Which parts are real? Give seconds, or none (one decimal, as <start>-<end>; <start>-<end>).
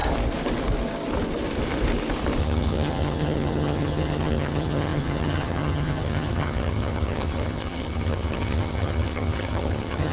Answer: 0.0-2.4